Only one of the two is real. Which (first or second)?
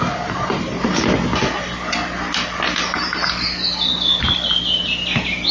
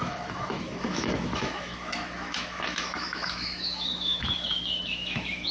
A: first